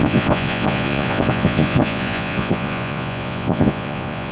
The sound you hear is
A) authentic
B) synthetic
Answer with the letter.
B